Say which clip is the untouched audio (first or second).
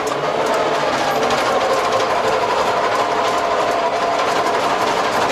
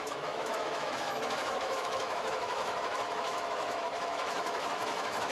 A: first